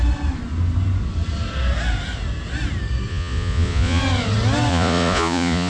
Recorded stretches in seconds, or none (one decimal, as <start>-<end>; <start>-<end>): 0.0-3.1; 4.0-4.7